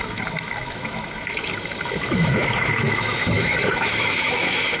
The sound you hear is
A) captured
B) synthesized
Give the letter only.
B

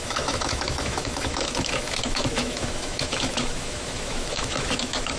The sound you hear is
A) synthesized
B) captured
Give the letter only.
A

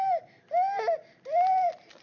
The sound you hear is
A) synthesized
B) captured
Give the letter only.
B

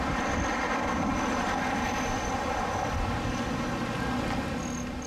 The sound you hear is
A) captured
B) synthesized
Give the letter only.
A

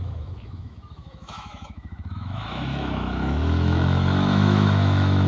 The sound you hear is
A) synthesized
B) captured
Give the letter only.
A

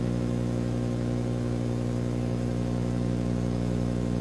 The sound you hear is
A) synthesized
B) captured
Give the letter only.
A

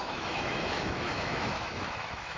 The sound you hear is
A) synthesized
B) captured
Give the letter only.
A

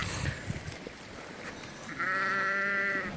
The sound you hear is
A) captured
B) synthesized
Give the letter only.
A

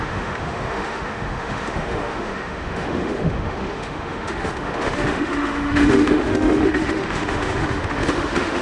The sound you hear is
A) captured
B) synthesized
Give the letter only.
B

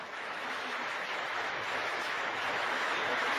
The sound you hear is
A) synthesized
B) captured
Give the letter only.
A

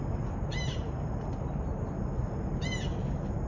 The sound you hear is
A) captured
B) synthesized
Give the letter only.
A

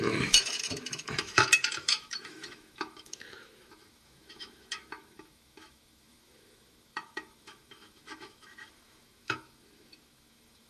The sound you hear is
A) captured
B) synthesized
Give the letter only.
B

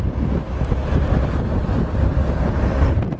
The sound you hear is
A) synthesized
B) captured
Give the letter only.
B